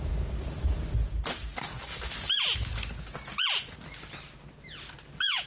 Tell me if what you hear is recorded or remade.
recorded